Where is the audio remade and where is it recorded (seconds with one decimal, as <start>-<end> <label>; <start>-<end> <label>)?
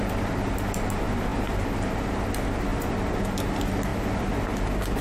0.0-1.3 recorded; 1.3-1.8 remade; 1.8-2.7 recorded; 2.7-3.2 remade; 3.2-5.0 recorded